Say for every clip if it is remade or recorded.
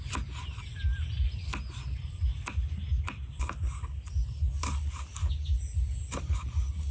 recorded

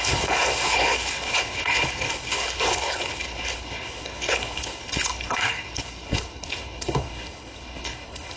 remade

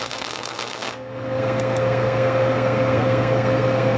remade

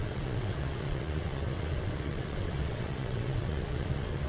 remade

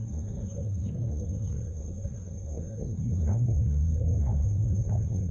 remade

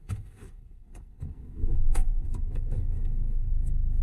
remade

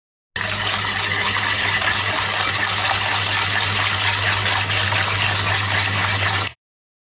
recorded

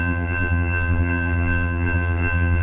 remade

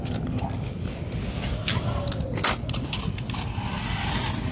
recorded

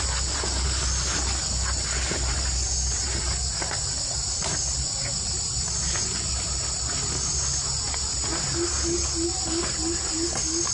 recorded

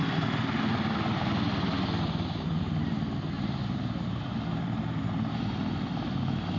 recorded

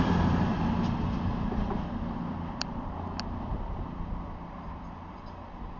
recorded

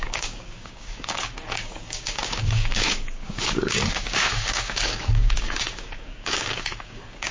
remade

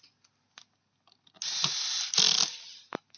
recorded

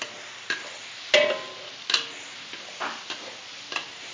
recorded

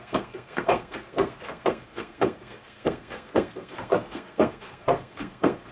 remade